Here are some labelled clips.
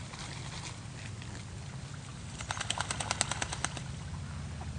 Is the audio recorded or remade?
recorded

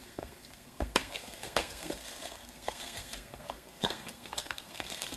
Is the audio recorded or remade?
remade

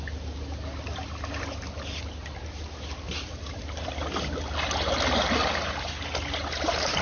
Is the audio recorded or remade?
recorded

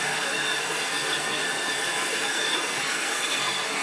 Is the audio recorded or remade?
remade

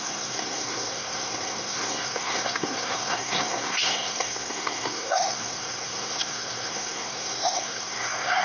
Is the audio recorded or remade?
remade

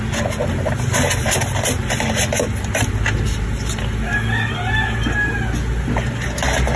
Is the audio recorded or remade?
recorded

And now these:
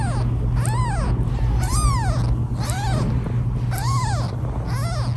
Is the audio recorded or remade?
recorded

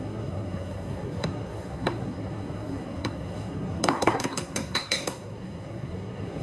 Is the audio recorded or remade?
remade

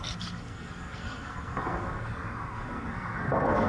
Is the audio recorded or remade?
remade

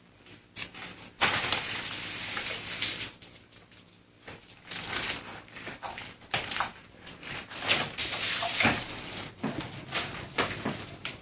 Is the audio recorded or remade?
recorded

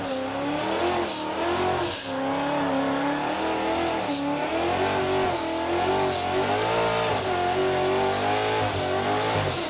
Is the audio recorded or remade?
recorded